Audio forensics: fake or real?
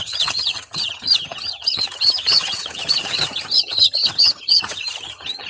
fake